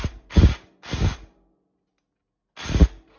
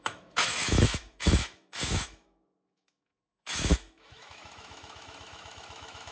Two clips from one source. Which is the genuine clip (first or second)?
first